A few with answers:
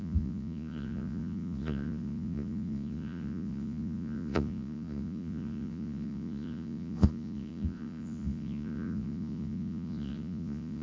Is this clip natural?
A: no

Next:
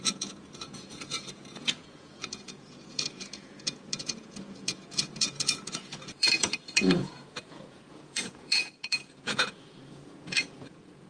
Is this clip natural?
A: no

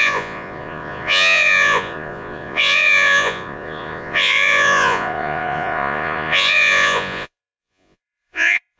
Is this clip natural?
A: no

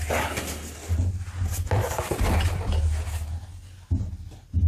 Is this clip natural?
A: yes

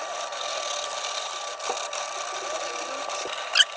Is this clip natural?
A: yes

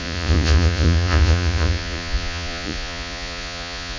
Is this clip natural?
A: no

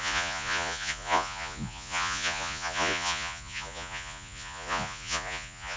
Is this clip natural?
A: no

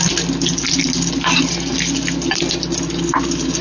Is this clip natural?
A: yes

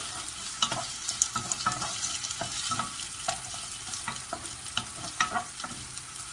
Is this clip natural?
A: yes